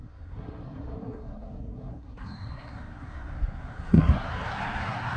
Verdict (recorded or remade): remade